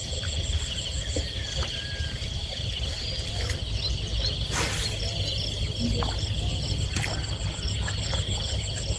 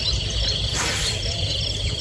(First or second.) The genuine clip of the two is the first